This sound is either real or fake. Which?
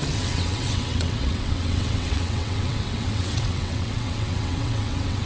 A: fake